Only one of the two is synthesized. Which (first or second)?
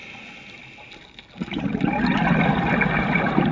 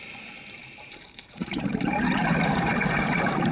second